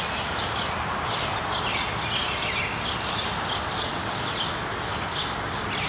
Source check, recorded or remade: recorded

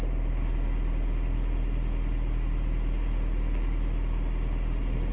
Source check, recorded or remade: recorded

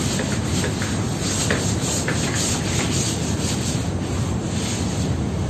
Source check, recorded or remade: recorded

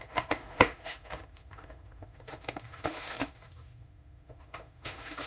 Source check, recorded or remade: remade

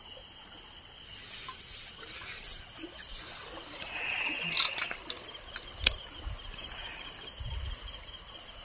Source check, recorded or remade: recorded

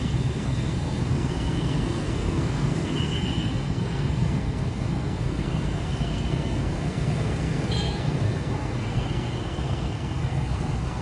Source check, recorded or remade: remade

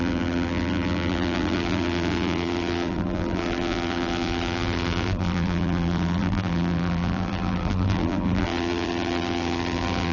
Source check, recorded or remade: remade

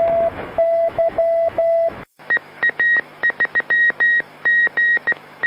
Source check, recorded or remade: remade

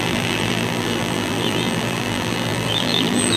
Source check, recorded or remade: remade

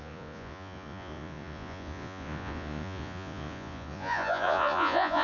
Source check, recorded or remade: remade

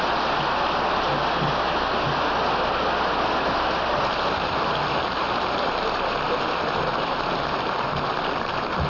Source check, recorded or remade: recorded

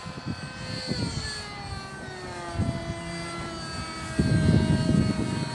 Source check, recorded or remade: recorded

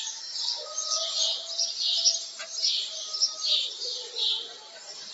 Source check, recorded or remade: recorded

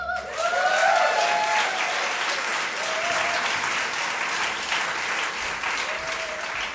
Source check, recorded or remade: recorded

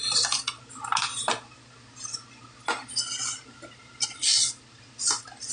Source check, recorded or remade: recorded